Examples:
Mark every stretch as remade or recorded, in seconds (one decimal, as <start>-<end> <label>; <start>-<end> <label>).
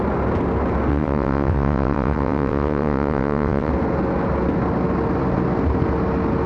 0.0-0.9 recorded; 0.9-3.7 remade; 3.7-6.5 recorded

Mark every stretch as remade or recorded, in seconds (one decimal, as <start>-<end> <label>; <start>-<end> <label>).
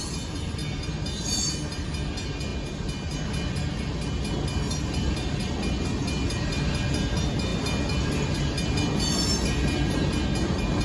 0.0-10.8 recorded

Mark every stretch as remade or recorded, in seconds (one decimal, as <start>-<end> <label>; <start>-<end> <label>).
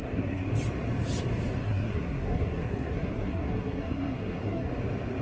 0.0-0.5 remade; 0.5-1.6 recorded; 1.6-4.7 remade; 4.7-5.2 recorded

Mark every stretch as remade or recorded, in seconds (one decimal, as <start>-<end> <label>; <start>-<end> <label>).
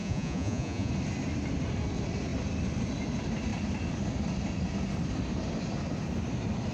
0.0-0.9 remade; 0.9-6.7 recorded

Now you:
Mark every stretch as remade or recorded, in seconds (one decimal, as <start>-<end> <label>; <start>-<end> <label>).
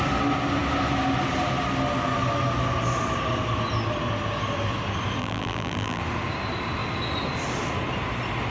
0.0-5.2 recorded; 5.2-6.0 remade; 6.0-8.5 recorded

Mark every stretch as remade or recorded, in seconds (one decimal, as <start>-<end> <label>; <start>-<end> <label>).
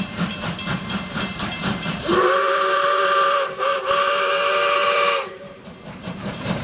0.0-6.6 remade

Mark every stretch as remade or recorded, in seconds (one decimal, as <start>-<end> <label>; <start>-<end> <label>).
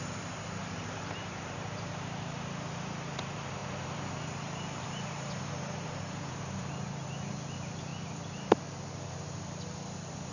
0.0-7.9 remade; 7.9-8.5 recorded; 8.5-10.3 remade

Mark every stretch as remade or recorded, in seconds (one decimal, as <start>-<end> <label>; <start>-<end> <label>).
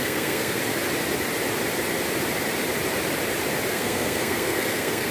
0.0-0.6 remade; 0.6-3.7 recorded; 3.7-5.1 remade